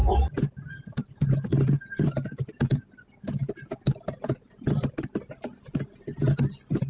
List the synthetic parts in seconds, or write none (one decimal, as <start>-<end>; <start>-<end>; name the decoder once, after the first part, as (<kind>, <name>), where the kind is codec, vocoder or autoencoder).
none